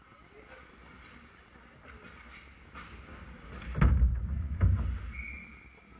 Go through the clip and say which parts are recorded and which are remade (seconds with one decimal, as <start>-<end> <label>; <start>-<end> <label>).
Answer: 0.0-4.1 recorded; 4.1-4.6 remade; 4.6-6.0 recorded